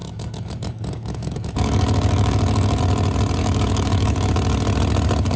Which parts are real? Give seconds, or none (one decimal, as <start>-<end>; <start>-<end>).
2.8-3.4; 4.3-5.4